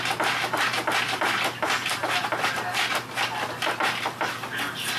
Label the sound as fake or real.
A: real